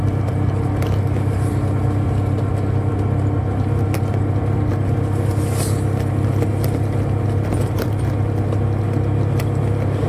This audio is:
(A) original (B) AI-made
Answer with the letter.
A